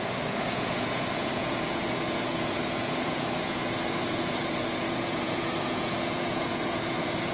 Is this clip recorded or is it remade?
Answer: remade